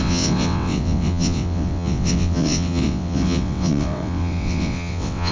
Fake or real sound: fake